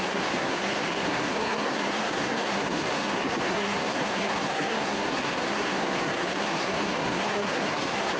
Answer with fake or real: fake